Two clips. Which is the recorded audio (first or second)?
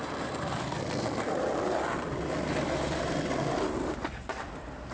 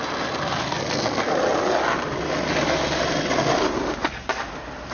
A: second